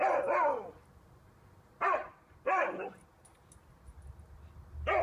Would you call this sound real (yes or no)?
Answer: yes